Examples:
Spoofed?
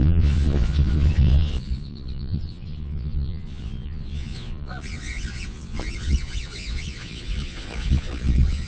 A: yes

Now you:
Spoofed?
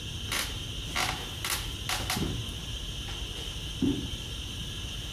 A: no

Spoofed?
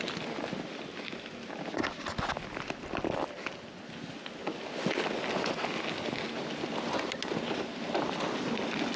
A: no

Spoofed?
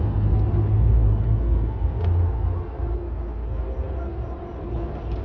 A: no